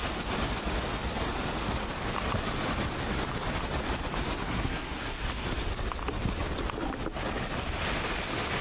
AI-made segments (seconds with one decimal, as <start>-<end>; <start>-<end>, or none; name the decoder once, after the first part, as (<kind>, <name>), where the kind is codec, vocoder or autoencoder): 4.4-5.2 (codec, SNAC)